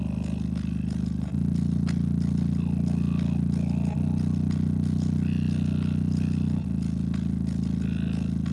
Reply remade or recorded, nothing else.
recorded